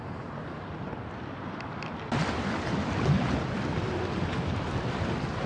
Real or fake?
real